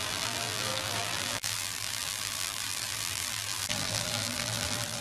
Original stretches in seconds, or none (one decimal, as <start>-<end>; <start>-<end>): none